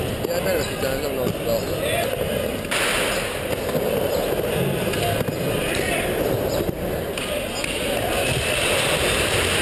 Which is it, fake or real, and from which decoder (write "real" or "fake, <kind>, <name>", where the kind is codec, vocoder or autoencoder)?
real